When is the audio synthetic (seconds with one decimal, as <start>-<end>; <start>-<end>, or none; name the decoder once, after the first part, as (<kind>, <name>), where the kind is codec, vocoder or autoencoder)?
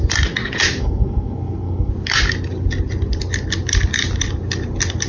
0.8-1.9 (codec, SNAC)